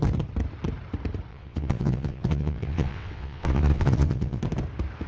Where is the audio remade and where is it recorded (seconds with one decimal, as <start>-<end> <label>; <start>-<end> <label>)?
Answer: 0.0-1.3 recorded; 1.3-4.4 remade; 4.4-5.1 recorded